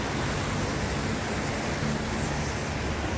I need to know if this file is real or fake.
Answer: real